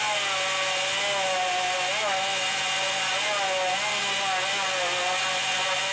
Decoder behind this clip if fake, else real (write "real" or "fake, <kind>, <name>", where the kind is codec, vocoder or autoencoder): real